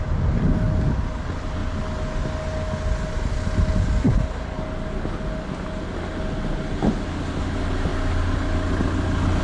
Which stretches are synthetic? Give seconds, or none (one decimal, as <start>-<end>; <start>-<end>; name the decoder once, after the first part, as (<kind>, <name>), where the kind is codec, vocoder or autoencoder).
none